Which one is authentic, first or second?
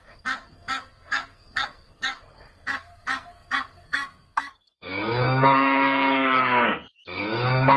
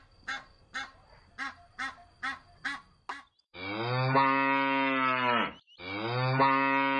second